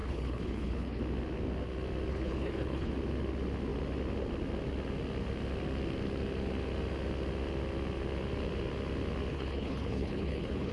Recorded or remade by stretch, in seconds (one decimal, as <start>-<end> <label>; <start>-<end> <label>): 0.0-1.0 remade; 1.0-2.1 recorded; 2.1-2.9 remade; 2.9-9.3 recorded; 9.3-10.7 remade